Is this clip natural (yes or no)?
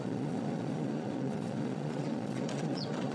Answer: no